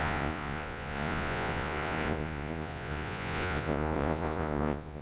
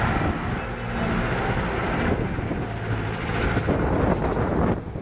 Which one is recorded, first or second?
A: second